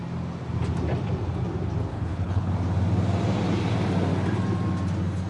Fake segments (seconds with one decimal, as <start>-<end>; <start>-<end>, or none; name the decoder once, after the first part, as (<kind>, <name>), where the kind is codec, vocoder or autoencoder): 1.9-2.5 (codec, HILCodec)